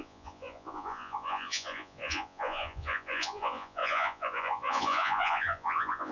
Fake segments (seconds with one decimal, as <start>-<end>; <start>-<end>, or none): 0.0-6.1